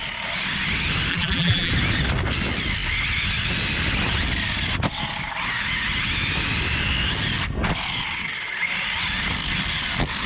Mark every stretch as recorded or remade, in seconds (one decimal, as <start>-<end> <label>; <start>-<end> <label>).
0.0-1.1 recorded; 1.1-1.7 remade; 1.7-10.3 recorded